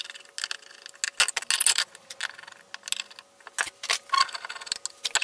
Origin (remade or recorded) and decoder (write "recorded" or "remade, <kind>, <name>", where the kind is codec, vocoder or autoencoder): recorded